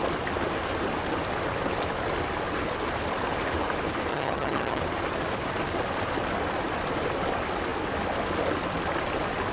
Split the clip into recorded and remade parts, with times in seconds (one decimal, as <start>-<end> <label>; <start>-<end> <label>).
0.0-4.1 recorded; 4.1-4.8 remade; 4.8-9.5 recorded

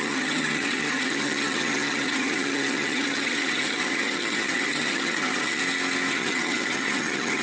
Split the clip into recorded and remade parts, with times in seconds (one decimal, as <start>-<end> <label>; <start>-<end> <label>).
0.0-5.6 remade; 5.6-6.1 recorded; 6.1-7.4 remade

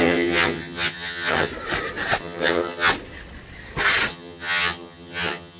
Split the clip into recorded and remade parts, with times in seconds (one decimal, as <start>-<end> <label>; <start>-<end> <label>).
0.0-1.5 remade; 1.5-2.2 recorded; 2.2-2.9 remade; 2.9-4.1 recorded; 4.1-5.6 remade